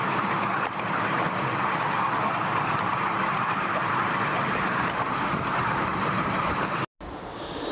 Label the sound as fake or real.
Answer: real